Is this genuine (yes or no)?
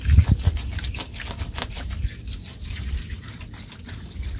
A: yes